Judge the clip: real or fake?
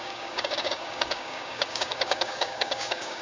fake